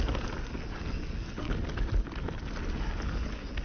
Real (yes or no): yes